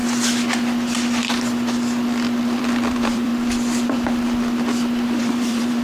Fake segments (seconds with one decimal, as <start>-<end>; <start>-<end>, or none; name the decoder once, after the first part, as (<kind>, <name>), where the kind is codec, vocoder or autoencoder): 2.6-3.3 (vocoder, BigVGAN v2); 5.2-5.8